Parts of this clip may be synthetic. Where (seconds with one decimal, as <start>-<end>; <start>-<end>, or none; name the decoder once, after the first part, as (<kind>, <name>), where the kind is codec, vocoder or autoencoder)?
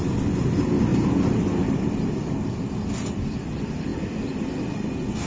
none